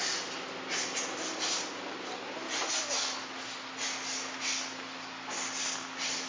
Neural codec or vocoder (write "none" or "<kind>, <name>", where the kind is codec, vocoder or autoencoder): none